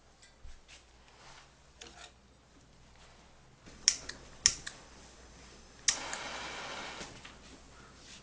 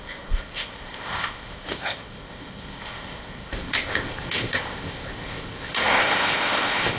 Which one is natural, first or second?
first